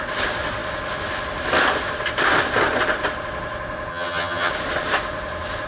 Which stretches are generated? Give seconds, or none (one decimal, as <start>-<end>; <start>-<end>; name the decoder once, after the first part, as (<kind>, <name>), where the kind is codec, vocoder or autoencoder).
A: 3.9-4.5 (vocoder, HiFi-GAN)